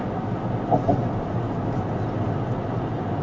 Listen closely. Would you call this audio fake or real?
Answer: real